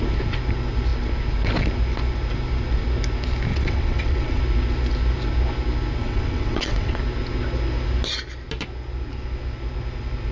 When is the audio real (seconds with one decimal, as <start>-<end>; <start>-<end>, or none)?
0.0-3.5; 4.4-6.0; 7.0-10.3